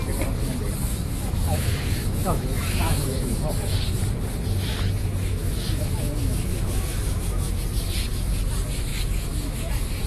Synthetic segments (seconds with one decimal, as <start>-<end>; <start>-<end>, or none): 0.9-3.5; 5.0-7.6; 8.9-9.7